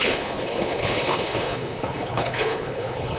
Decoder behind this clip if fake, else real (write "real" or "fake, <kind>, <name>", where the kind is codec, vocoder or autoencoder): fake, codec, HILCodec